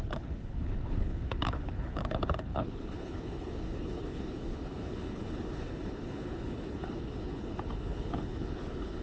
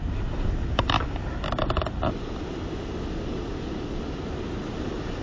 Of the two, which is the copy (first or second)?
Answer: first